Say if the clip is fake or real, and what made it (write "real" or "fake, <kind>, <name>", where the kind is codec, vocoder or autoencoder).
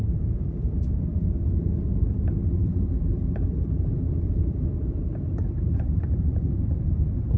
fake, vocoder, BigVGAN v2